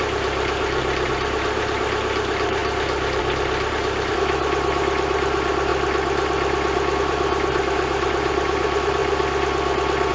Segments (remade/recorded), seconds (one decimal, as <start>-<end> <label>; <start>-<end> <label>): 0.0-5.7 remade; 5.7-7.0 recorded; 7.0-9.0 remade; 9.0-10.1 recorded